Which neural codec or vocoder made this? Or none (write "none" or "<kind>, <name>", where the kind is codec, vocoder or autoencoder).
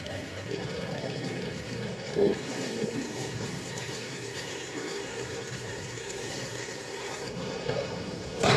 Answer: codec, SNAC